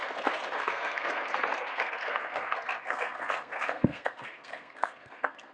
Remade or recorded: remade